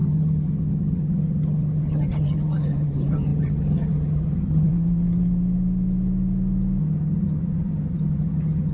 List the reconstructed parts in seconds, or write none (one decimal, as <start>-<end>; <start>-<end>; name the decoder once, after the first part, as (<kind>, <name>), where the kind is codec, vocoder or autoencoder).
0.0-4.7 (vocoder, HiFi-GAN); 6.8-8.7